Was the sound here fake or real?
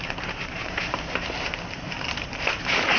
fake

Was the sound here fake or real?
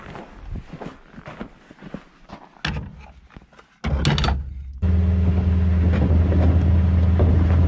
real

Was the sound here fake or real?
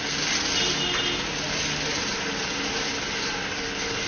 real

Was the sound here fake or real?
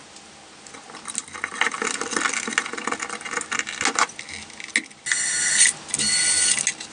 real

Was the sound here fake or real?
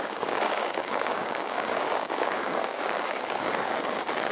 fake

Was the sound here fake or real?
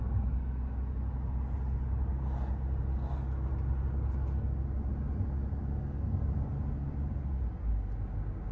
real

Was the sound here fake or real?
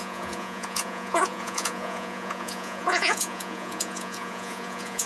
fake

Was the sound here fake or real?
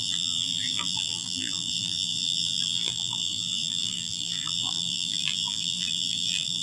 fake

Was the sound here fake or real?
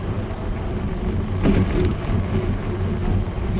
real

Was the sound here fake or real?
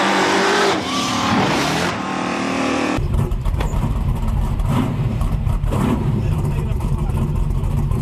fake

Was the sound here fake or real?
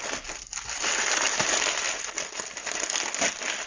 real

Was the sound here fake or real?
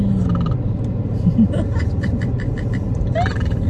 real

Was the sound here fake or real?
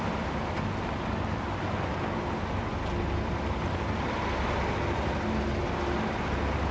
real